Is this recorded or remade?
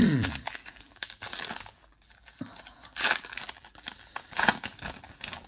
remade